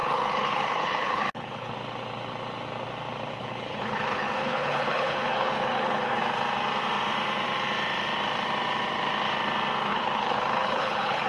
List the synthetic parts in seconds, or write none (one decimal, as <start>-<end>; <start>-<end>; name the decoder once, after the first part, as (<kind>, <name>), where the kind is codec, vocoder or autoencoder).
0.0-1.7 (codec, HILCodec); 3.3-6.2; 9.9-11.3